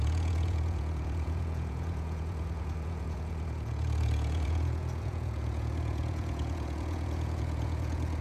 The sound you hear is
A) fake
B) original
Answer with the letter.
A